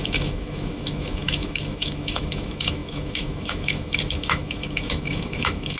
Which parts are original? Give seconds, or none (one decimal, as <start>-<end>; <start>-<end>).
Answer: none